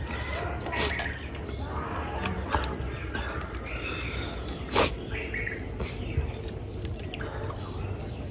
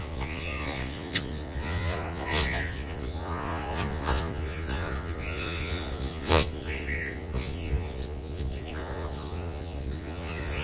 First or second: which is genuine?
first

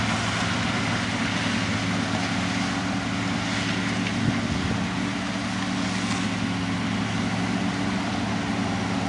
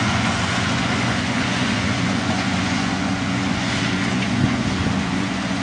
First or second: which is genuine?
first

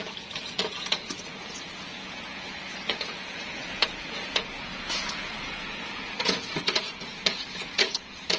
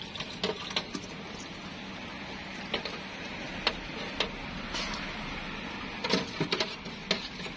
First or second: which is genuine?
second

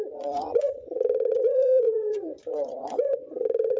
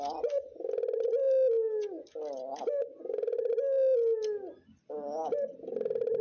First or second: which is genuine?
second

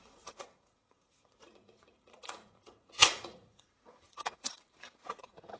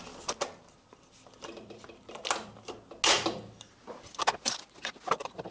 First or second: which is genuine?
second